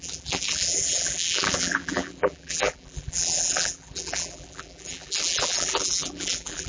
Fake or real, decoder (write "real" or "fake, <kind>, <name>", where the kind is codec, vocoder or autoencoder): fake, vocoder, BigVGAN v2